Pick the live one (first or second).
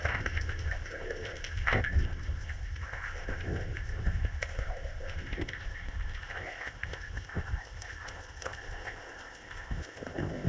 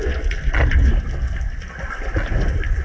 second